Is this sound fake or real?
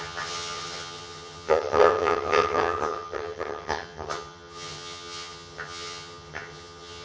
fake